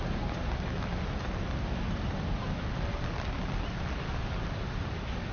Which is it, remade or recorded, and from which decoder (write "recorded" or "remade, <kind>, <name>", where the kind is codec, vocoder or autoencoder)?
recorded